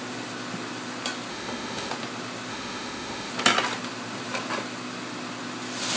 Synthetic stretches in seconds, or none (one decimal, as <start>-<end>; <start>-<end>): 1.3-1.9; 2.5-3.3